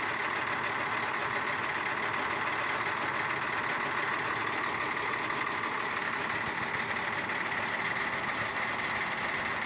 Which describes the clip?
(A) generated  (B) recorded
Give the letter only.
B